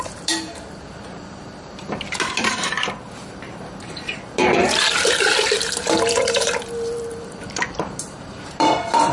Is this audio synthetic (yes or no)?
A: yes